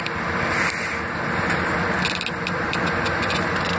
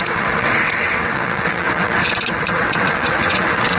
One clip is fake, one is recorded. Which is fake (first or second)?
second